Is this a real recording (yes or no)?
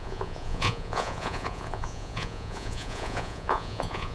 no